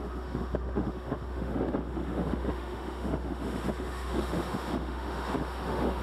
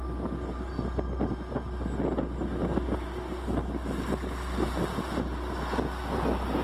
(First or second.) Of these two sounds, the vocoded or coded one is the first